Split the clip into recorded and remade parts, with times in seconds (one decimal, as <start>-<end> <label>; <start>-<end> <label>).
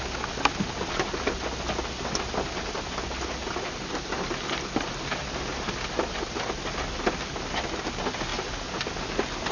0.0-9.5 recorded